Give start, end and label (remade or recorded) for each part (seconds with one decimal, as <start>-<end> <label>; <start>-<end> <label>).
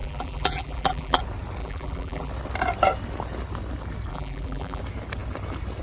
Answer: 0.0-1.2 remade; 1.2-1.6 recorded; 1.6-2.3 remade; 2.3-4.1 recorded; 4.1-4.8 remade; 4.8-5.8 recorded